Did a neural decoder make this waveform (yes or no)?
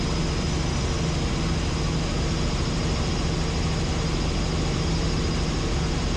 no